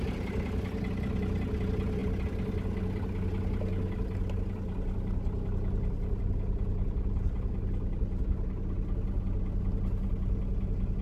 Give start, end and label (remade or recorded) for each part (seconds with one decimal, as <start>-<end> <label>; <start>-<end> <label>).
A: 0.0-11.0 recorded